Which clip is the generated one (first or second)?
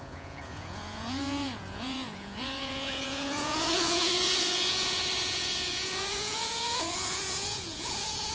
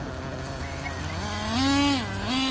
first